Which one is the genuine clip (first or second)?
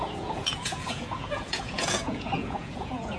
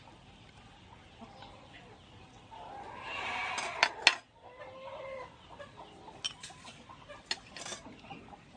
second